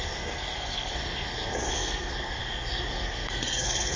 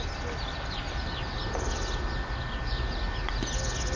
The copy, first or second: first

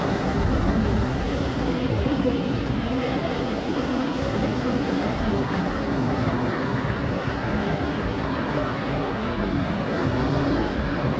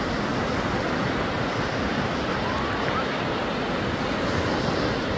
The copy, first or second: first